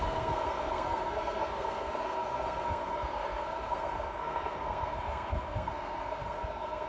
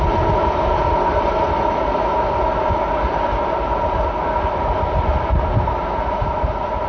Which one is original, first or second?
second